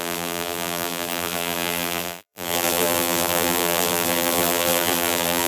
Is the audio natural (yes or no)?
no